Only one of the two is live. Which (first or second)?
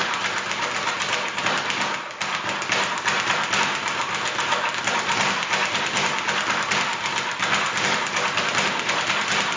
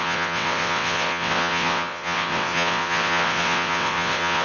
first